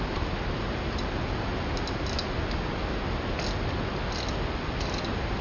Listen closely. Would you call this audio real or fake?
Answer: real